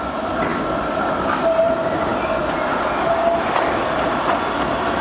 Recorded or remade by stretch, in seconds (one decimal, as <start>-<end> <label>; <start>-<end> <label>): 0.0-5.0 recorded